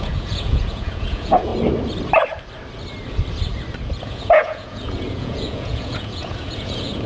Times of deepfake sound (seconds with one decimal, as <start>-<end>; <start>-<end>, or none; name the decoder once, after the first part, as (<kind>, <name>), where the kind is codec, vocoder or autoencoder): 0.0-1.5 (vocoder, Vocos); 4.0-7.1